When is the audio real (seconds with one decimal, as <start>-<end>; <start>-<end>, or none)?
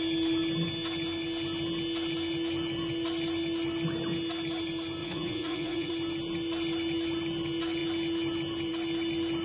0.0-5.0; 5.9-9.4